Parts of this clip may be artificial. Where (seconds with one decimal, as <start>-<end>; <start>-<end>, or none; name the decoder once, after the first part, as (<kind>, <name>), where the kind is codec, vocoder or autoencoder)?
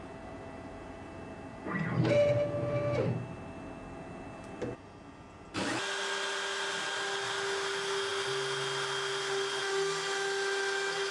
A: none